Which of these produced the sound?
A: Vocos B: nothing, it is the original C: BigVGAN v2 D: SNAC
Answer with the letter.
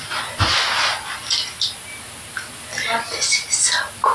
B